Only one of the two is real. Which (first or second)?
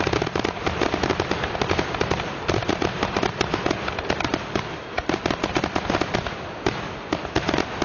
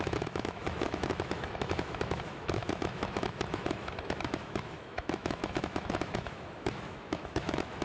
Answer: first